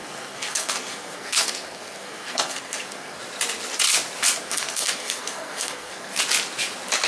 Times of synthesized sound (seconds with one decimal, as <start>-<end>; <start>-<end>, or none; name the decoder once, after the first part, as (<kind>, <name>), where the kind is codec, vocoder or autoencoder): 0.0-3.2 (codec, SNAC); 4.4-6.2